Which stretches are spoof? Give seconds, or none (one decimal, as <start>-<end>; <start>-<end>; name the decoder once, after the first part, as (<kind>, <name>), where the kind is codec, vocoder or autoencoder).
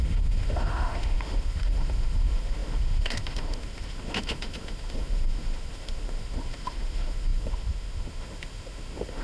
0.0-9.2 (autoencoder, DAC-VAE)